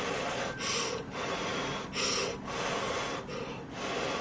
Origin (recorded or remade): recorded